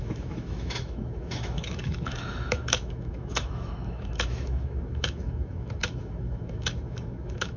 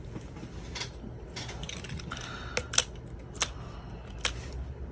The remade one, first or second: first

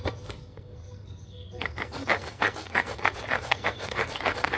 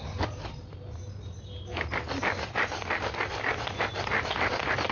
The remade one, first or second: first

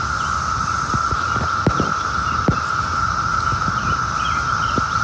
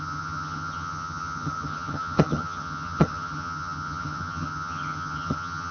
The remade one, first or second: second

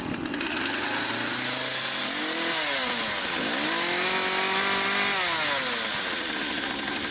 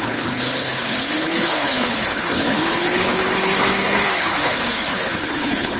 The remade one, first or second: second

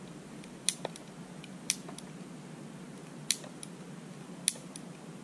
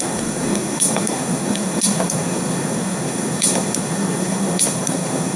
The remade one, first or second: second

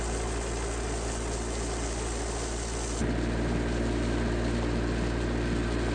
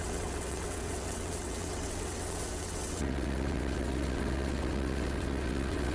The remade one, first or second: second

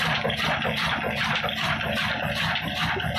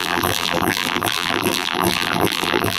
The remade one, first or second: second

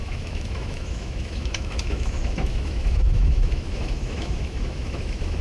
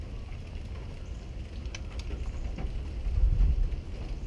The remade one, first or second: first